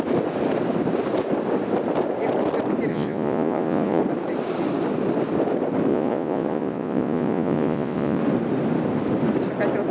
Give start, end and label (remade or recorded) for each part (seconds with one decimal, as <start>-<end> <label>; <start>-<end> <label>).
0.0-2.9 recorded; 2.9-4.0 remade; 4.0-5.9 recorded; 5.9-8.2 remade; 8.2-9.9 recorded